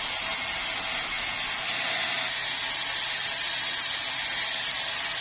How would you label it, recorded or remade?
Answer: recorded